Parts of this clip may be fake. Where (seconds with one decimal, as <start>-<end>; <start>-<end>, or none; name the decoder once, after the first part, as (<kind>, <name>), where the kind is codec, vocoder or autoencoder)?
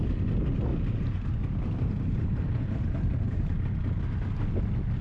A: 0.7-3.5 (vocoder, BigVGAN v2)